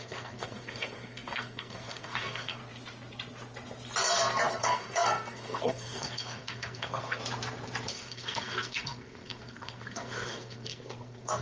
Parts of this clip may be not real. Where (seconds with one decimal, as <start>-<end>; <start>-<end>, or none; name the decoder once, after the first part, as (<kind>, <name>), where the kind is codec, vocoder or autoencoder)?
0.0-2.6 (codec, SNAC); 4.6-7.2; 7.9-11.4